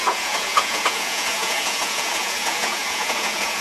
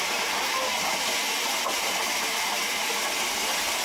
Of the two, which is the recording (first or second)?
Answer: second